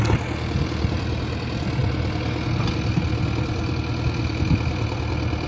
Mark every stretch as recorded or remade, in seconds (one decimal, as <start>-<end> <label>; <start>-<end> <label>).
0.0-5.5 recorded